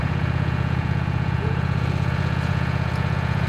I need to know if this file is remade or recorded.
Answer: remade